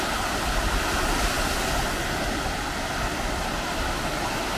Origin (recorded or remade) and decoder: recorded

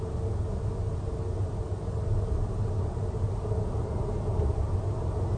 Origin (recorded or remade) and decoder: recorded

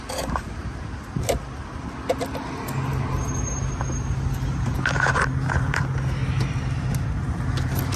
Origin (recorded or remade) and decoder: recorded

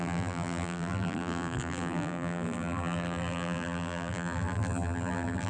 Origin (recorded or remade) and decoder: remade, vocoder, BigVGAN v2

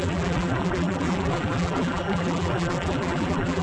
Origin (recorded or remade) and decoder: remade, vocoder, BigVGAN v2